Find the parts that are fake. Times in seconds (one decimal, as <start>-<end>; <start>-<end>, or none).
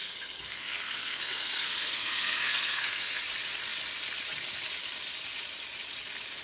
0.0-3.2